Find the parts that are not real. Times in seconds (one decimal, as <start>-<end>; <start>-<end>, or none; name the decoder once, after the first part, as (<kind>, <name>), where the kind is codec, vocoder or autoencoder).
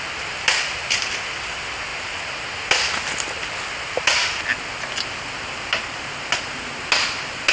none